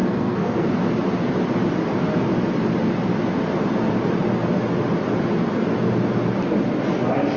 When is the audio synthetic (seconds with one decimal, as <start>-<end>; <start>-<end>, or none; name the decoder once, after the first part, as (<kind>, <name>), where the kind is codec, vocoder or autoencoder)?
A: 0.0-0.7 (codec, SNAC)